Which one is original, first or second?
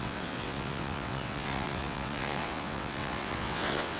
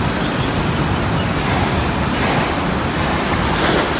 second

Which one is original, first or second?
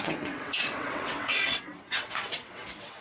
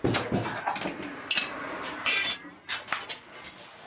second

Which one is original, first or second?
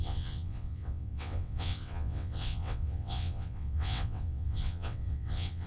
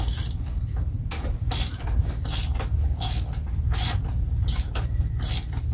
second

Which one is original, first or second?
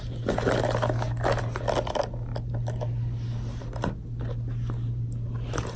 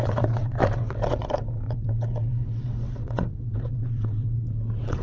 first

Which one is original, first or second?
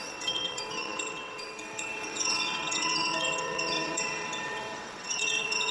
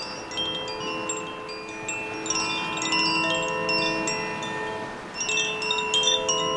second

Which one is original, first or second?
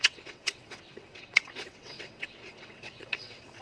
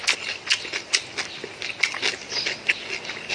second